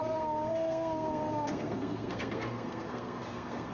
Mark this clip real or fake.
fake